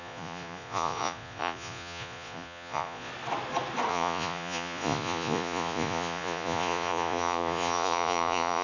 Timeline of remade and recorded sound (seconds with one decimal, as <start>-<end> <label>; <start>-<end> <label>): 0.0-3.1 remade; 3.1-3.9 recorded; 3.9-8.6 remade